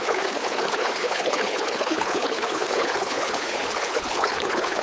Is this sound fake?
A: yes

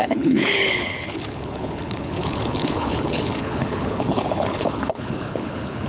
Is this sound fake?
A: yes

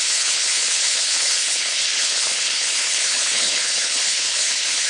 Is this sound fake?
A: yes